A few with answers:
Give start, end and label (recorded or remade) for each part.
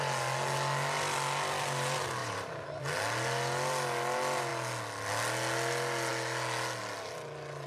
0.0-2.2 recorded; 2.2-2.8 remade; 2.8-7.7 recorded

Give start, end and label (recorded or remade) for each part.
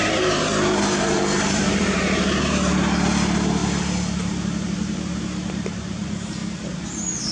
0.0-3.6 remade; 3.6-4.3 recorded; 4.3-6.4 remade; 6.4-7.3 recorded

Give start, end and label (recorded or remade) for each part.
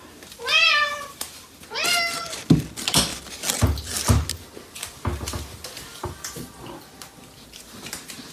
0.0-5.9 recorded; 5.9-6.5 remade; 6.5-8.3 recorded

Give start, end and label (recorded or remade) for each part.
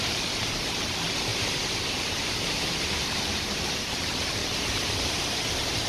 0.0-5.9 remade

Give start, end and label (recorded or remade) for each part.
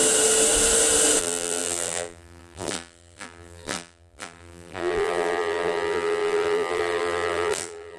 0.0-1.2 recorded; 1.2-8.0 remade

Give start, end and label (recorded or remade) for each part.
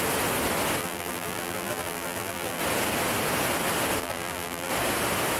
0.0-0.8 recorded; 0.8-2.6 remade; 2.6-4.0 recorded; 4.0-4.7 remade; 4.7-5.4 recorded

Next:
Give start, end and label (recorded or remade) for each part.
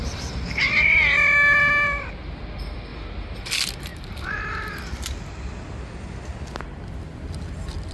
0.0-0.6 remade; 0.6-2.9 recorded; 2.9-3.5 remade; 3.5-3.9 recorded; 3.9-5.3 remade; 5.3-7.9 recorded